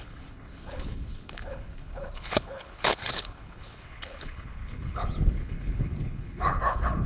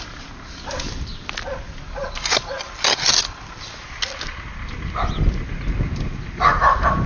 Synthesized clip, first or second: first